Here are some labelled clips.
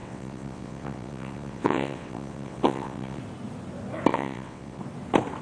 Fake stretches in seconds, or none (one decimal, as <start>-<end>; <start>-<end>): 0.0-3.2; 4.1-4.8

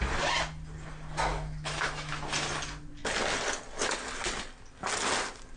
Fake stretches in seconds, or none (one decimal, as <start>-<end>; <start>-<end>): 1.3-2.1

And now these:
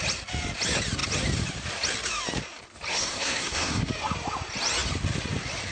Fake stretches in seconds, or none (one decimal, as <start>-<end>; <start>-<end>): 2.9-3.9

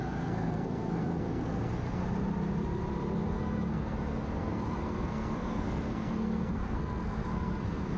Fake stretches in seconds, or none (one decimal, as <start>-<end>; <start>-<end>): 0.0-2.0; 3.3-8.0

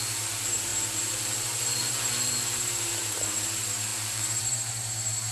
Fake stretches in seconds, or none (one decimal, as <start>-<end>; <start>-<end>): 0.0-5.3

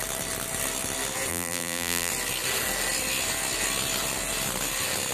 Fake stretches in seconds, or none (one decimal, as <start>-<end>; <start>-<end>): 1.3-2.1